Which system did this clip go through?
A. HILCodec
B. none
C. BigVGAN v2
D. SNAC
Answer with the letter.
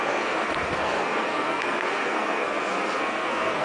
D